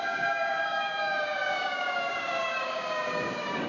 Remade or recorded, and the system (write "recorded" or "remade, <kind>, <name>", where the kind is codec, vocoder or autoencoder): remade, codec, DAC